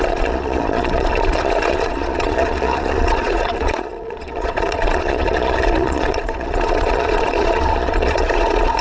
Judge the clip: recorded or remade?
remade